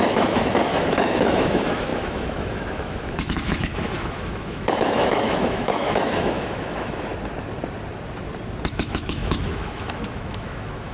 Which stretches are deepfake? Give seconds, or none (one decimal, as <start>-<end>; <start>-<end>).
0.0-7.1; 8.7-10.9